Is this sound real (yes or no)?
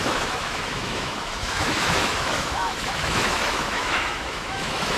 no